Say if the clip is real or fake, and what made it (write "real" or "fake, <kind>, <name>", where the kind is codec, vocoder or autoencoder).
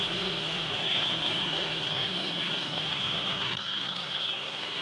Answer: fake, codec, SNAC